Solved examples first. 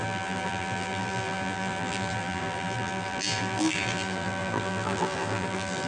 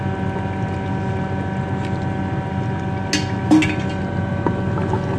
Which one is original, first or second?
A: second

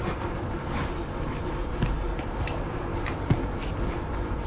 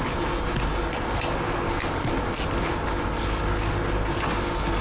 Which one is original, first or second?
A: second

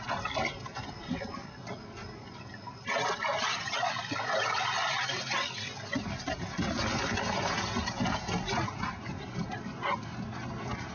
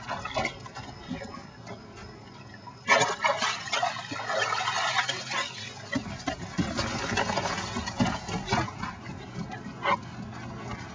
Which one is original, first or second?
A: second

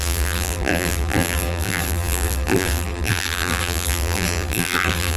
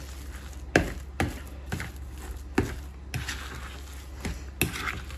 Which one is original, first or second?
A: second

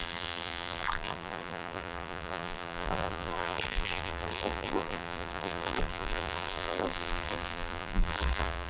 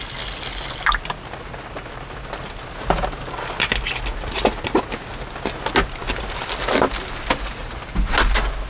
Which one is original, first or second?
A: second